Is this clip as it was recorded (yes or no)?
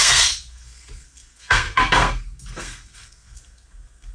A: no